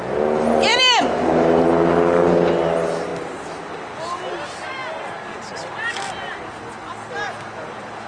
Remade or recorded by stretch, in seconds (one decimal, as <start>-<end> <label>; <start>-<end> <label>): 0.0-8.1 recorded